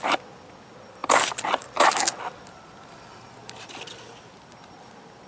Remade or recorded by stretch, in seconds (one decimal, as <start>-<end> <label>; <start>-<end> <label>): 0.0-1.0 recorded; 1.0-3.9 remade; 3.9-5.3 recorded